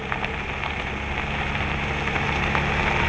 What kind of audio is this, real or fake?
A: real